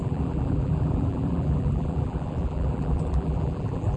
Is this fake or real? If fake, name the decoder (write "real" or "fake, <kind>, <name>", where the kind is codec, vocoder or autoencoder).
fake, vocoder, BigVGAN v2